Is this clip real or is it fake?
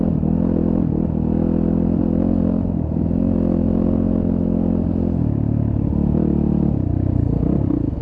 real